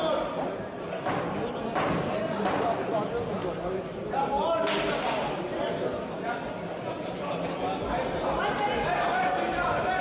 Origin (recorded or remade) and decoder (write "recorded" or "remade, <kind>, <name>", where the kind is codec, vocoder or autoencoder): recorded